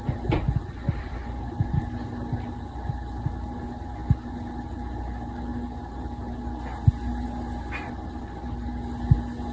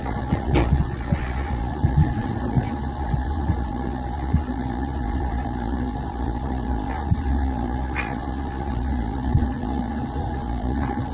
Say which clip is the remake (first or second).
second